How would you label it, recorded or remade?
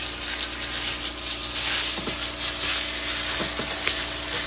recorded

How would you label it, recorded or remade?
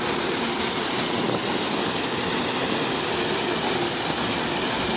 recorded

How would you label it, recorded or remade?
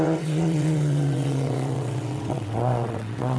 remade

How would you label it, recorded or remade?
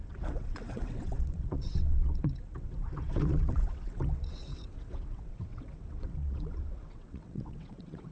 remade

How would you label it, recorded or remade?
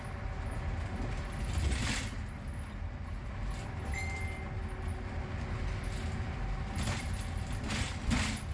recorded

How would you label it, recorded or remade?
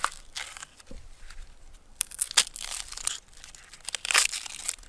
recorded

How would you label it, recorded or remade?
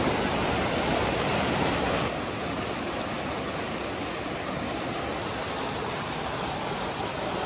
recorded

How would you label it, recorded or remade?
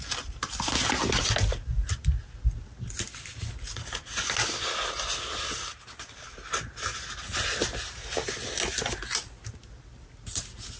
recorded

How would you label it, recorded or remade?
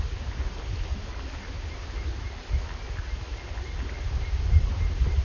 recorded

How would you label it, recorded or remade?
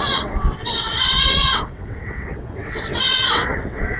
remade